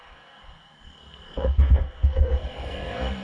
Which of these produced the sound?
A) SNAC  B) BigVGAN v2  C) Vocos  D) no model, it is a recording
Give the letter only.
A